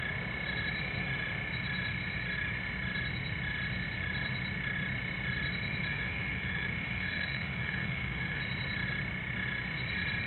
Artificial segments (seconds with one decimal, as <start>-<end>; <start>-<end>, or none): 5.9-8.4